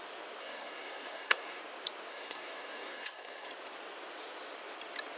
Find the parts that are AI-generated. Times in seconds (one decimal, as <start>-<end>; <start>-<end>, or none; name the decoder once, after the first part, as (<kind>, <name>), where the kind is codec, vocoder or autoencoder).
0.4-1.6 (codec, SNAC); 2.1-3.5